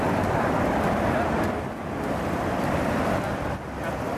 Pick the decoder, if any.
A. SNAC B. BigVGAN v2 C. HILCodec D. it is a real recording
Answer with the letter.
D